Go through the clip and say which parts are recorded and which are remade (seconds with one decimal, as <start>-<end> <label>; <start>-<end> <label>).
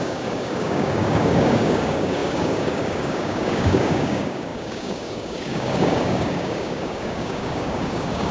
0.0-8.3 remade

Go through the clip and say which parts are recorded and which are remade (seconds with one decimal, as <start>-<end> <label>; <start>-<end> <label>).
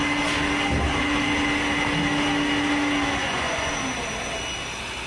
0.0-3.2 recorded; 3.2-3.7 remade; 3.7-5.1 recorded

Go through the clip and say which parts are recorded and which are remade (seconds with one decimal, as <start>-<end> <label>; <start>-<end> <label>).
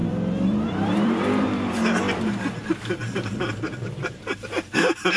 0.0-2.0 remade; 2.0-5.2 recorded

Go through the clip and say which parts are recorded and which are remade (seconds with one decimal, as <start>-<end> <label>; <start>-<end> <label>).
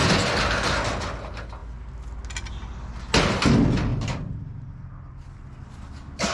0.0-6.3 recorded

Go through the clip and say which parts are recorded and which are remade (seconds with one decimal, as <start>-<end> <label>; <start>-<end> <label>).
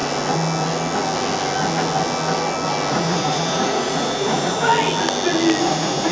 0.0-2.9 recorded; 2.9-4.7 remade; 4.7-5.6 recorded; 5.6-6.1 remade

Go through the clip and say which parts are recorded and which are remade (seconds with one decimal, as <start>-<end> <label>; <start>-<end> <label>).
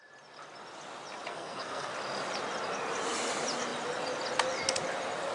0.0-1.3 recorded; 1.3-1.9 remade; 1.9-5.3 recorded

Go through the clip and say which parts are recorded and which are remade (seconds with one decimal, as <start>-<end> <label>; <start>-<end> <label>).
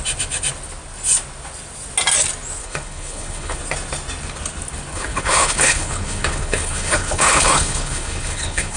0.0-2.6 recorded; 2.6-3.6 remade; 3.6-4.9 recorded; 4.9-8.8 remade